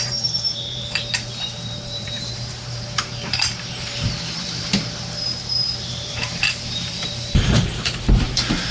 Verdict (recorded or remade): remade